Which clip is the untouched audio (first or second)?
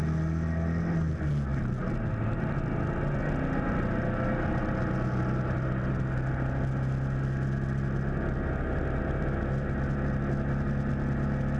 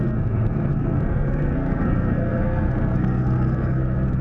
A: first